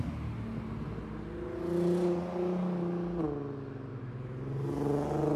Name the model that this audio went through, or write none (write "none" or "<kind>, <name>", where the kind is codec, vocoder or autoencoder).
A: none